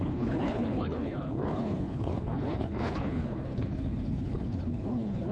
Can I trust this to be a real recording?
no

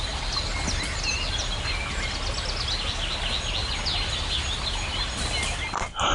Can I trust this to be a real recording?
yes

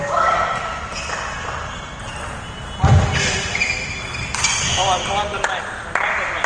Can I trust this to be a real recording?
yes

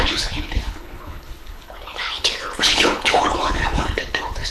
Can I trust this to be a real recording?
no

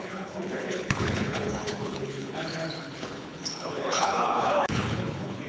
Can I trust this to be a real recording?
no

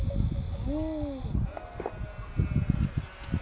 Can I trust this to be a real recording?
yes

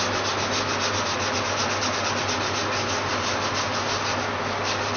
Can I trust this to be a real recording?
yes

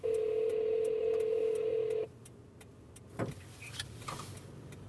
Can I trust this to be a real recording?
yes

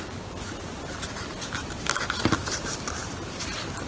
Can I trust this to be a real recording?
yes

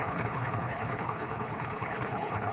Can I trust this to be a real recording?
no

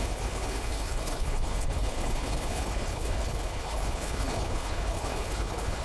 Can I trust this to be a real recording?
no